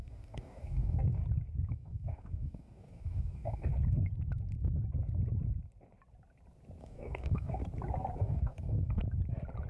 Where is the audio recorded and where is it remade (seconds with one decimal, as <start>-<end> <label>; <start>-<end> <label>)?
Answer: 0.0-1.2 remade; 1.2-1.7 recorded; 1.7-3.7 remade; 3.7-6.8 recorded; 6.8-7.6 remade; 7.6-8.2 recorded; 8.2-9.0 remade; 9.0-9.7 recorded